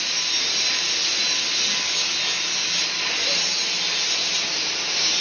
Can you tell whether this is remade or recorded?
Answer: recorded